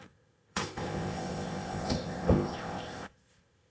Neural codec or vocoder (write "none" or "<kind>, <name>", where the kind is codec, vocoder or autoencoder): codec, ZipCodec